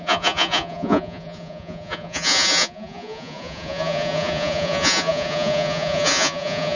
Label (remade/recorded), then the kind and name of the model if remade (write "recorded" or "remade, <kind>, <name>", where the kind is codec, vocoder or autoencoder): remade, vocoder, Vocos